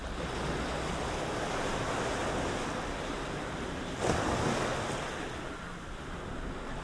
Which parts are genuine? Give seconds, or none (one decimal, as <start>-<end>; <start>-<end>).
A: 0.0-6.8